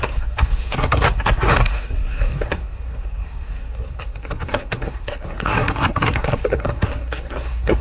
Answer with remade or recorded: remade